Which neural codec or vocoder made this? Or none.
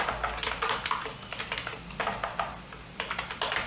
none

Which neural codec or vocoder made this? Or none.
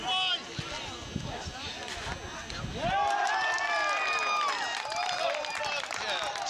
none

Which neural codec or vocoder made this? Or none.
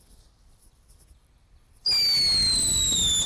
none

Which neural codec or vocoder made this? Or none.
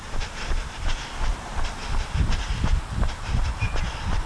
none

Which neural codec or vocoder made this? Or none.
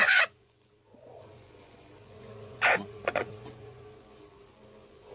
vocoder, Vocos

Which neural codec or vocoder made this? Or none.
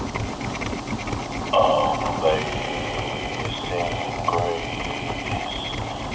none